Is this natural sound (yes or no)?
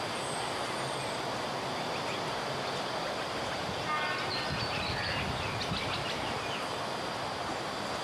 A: yes